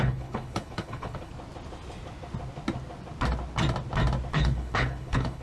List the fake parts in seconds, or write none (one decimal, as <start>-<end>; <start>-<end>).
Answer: 0.0-1.3; 4.3-5.4